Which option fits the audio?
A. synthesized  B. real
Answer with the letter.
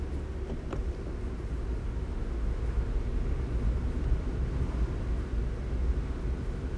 B